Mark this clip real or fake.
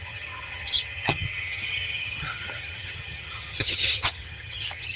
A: fake